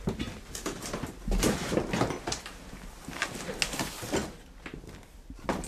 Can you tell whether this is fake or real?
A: real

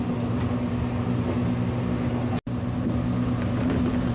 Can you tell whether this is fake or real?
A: real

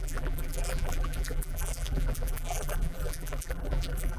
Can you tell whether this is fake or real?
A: fake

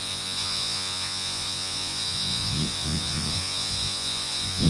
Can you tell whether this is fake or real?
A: fake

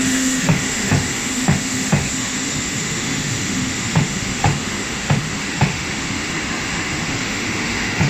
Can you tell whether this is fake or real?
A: fake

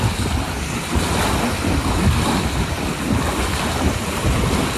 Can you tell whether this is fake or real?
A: real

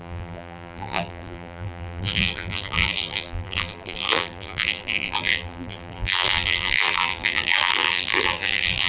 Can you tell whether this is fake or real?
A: fake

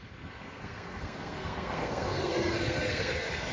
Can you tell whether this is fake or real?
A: fake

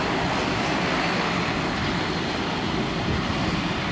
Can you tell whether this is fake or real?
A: real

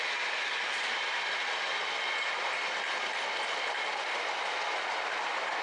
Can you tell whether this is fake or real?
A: real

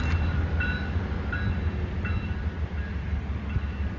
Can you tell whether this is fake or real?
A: real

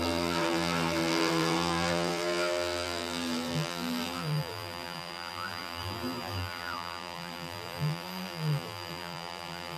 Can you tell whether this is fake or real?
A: fake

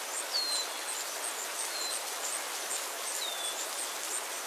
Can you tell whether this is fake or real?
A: real